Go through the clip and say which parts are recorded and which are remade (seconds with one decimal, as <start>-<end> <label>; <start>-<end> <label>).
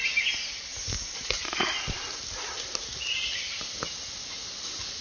0.0-5.0 recorded